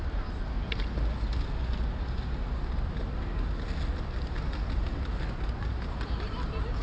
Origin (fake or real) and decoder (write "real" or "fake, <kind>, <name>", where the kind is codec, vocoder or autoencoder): real